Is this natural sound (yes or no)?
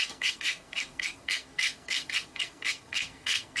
no